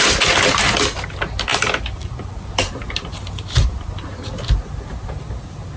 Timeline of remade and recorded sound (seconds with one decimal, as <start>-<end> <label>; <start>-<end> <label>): 0.0-5.8 recorded